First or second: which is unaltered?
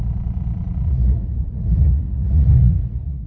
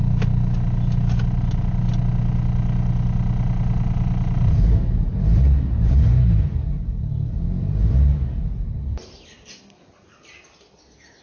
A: second